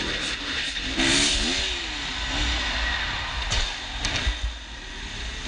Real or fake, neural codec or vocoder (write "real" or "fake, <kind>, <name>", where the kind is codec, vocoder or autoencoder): real